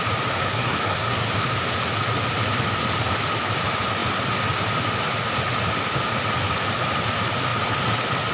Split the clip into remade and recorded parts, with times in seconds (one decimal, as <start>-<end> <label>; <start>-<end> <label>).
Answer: 0.0-0.4 recorded; 0.4-1.2 remade; 1.2-8.3 recorded